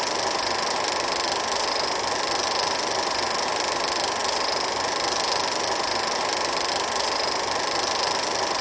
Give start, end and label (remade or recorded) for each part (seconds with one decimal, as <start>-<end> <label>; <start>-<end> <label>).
0.0-8.6 recorded